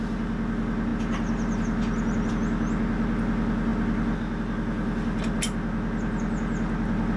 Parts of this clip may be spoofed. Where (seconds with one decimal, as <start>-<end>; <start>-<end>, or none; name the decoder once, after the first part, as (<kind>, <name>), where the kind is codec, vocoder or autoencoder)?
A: none